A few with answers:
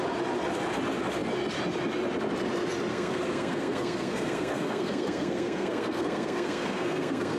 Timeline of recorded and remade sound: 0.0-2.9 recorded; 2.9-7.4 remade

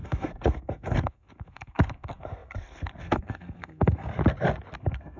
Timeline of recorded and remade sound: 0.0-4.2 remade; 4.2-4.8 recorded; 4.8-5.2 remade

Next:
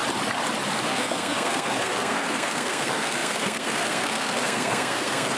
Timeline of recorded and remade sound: 0.0-0.8 recorded; 0.8-5.4 remade